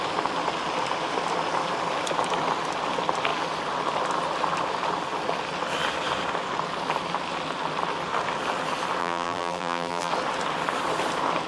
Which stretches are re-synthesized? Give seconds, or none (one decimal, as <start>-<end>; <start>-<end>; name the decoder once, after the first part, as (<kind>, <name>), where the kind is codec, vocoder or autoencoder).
9.0-10.1 (vocoder, BigVGAN v2)